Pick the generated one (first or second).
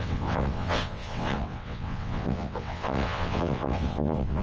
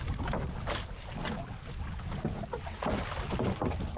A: first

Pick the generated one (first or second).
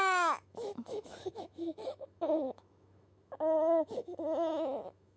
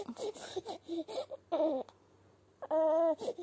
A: first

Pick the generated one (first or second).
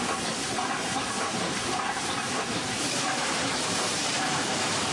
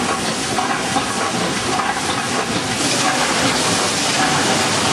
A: first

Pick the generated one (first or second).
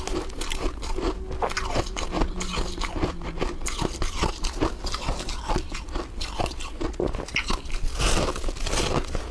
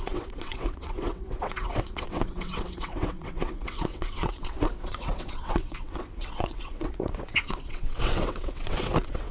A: second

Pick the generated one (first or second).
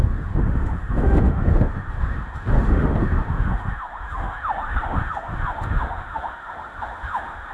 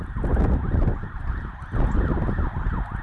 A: first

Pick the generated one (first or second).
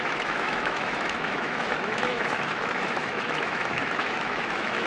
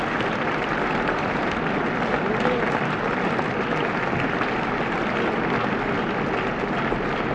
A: first